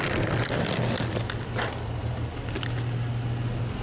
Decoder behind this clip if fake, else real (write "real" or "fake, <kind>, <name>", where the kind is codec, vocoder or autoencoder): real